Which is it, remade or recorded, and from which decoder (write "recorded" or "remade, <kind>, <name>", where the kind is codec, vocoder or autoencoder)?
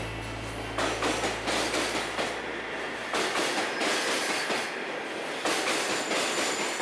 recorded